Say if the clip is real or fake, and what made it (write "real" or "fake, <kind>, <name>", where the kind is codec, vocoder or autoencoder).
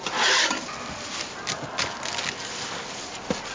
real